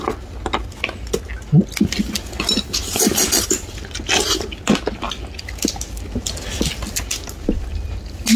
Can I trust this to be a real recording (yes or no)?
yes